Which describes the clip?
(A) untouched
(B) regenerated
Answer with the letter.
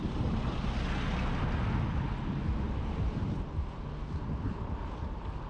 A